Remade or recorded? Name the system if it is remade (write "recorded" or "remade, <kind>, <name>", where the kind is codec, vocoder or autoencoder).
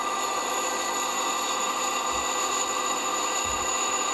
recorded